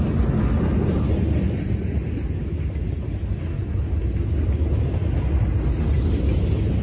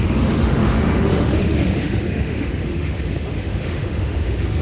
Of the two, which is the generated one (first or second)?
second